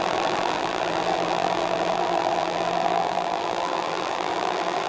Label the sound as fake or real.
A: fake